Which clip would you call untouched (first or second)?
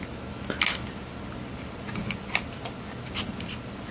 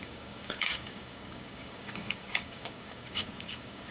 first